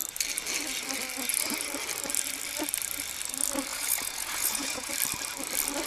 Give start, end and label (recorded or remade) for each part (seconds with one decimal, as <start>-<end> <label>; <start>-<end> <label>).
0.0-3.7 recorded; 3.7-4.9 remade; 4.9-5.9 recorded